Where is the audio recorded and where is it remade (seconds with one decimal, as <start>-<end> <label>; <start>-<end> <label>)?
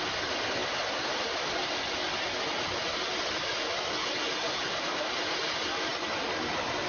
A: 0.0-6.9 recorded